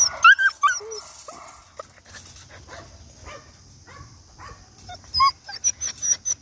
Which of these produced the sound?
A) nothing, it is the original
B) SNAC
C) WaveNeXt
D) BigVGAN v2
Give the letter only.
A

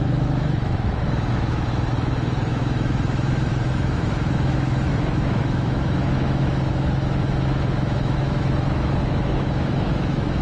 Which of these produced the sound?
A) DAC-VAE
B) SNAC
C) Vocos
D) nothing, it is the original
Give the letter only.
A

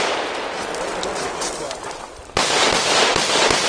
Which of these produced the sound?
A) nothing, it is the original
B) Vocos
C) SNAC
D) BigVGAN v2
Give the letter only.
A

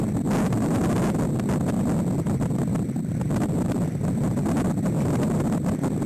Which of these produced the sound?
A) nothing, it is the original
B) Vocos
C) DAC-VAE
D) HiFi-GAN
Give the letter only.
A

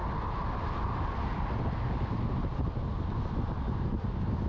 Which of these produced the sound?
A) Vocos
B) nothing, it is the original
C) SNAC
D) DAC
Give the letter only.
B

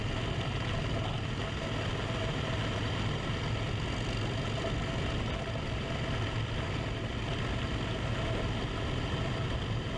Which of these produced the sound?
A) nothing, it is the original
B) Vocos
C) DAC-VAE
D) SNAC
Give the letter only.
A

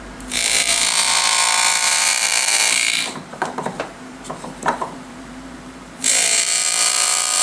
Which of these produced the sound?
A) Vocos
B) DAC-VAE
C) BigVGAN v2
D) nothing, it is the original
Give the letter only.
C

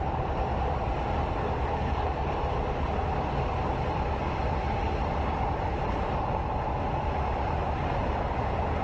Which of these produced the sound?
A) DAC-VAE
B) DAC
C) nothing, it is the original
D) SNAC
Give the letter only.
C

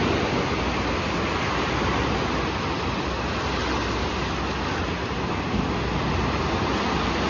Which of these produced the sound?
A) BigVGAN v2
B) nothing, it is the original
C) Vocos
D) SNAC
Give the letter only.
B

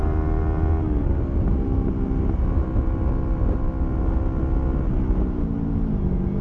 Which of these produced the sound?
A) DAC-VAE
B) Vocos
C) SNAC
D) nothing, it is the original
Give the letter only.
D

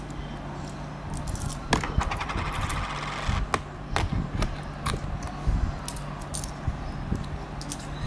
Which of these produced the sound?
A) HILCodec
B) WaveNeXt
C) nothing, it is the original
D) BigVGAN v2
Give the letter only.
C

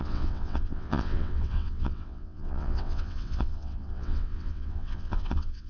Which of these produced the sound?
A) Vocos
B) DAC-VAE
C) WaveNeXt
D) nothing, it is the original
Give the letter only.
C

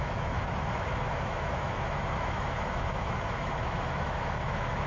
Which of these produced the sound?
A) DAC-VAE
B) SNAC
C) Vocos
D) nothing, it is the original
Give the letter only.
A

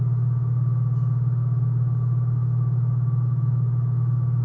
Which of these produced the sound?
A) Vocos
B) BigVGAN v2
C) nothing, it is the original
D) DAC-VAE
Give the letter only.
C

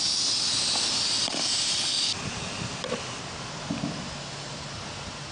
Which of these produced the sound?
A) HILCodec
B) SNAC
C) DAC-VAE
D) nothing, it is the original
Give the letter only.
D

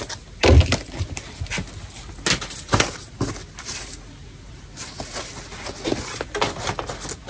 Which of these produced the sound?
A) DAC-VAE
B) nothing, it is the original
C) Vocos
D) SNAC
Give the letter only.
B